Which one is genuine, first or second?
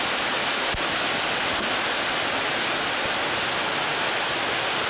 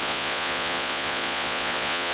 first